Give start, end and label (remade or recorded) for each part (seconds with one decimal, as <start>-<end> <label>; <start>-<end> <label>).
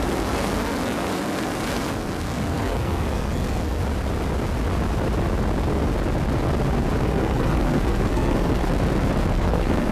0.0-3.8 remade; 3.8-7.0 recorded; 7.0-8.6 remade; 8.6-9.3 recorded; 9.3-9.9 remade